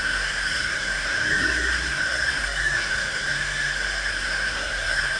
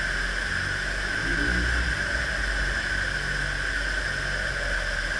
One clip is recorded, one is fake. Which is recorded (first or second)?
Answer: second